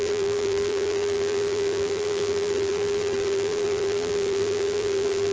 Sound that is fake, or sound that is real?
fake